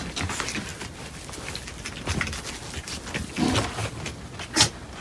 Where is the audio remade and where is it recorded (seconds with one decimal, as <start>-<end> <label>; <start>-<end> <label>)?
0.0-5.0 recorded